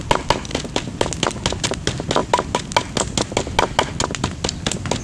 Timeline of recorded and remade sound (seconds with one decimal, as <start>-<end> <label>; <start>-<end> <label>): 0.0-5.0 recorded